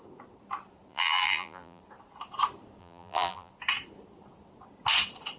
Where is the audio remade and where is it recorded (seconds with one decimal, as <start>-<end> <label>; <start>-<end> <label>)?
0.0-0.9 recorded; 0.9-1.8 remade; 1.8-2.8 recorded; 2.8-3.5 remade; 3.5-5.4 recorded